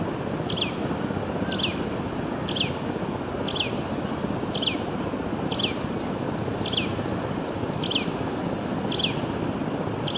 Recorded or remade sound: recorded